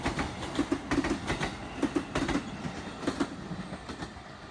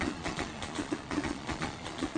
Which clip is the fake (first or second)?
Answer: second